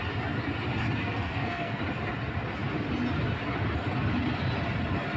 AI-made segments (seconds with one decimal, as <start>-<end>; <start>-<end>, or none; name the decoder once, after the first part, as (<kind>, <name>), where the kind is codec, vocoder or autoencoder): 1.0-1.8 (codec, SNAC)